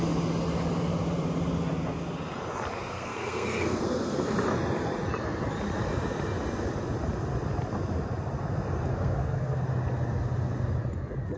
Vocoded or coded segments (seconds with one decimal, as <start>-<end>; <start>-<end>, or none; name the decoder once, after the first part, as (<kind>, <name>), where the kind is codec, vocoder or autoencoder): 2.9-4.2 (codec, SNAC); 8.9-9.6

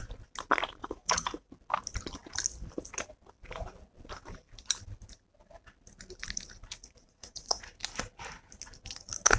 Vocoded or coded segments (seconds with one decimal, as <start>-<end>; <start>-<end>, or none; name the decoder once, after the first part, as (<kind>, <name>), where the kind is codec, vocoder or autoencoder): 0.8-1.5 (vocoder, Vocos); 6.8-7.6

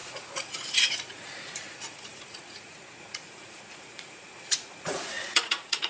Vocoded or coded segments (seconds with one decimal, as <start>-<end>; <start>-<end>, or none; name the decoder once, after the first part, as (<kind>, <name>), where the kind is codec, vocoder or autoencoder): 0.0-5.9 (vocoder, Vocos)

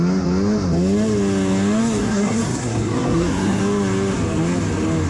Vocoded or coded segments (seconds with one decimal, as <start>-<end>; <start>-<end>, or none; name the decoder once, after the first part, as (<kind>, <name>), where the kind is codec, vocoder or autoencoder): 2.0-3.6 (codec, SNAC)

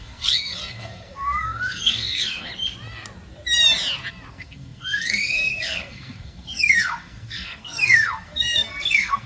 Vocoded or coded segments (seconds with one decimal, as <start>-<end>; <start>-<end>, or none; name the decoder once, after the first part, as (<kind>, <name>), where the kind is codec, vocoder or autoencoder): 0.0-2.5 (codec, SNAC); 4.3-9.3

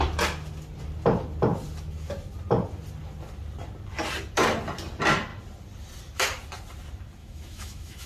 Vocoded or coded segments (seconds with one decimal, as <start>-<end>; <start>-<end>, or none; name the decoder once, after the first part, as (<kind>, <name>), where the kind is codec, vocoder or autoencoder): 7.2-8.1 (autoencoder, DAC-VAE)